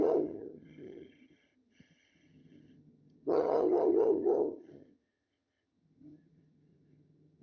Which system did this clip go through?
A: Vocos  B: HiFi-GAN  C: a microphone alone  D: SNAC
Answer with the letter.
B